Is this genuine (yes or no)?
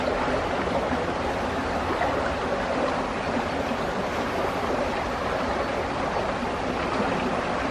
yes